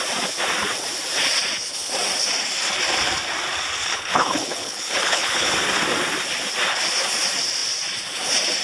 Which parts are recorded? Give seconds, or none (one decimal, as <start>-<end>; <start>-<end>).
0.0-3.9; 5.5-8.6